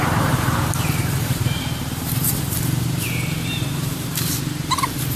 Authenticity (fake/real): fake